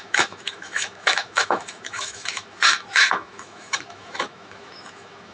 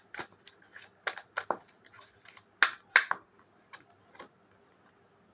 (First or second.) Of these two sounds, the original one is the second